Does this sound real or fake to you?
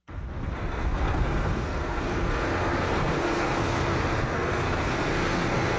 fake